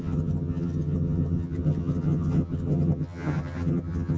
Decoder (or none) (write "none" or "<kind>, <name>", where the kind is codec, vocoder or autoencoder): vocoder, HiFi-GAN